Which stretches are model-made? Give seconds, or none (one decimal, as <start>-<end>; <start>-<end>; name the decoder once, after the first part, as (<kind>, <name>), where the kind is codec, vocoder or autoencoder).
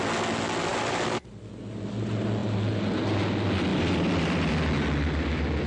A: 0.7-1.3 (vocoder, BigVGAN v2); 3.7-4.5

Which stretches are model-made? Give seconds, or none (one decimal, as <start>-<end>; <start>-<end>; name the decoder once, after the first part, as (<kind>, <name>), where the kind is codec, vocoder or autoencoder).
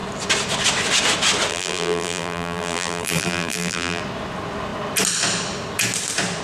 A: 1.5-4.0 (vocoder, BigVGAN v2)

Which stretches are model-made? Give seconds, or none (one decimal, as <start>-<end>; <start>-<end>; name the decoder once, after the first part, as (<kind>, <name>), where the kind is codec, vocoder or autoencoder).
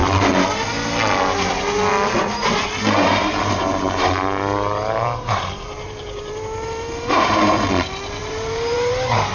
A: 2.8-7.7 (vocoder, BigVGAN v2); 8.2-9.3